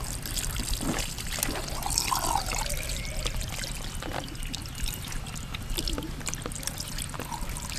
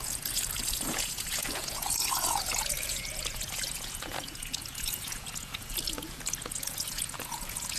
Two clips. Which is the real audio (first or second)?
first